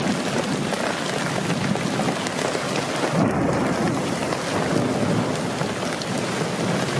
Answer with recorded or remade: recorded